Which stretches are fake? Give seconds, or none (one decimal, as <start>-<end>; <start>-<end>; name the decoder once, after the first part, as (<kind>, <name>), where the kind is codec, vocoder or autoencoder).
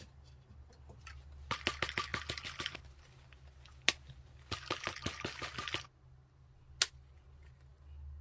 none